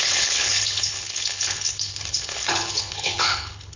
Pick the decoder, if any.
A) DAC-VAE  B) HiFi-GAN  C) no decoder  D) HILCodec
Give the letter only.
D